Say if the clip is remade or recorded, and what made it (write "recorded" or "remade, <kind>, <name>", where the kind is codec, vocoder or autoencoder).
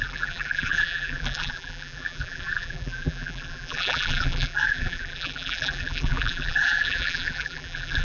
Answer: remade, vocoder, BigVGAN v2